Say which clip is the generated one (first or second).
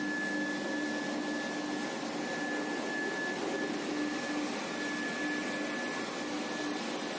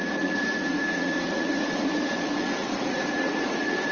second